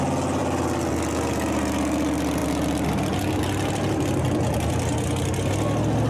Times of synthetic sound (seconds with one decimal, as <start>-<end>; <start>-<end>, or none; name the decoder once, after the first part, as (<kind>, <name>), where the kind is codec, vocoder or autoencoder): none